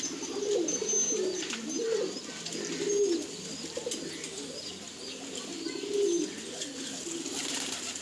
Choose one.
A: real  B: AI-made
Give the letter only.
A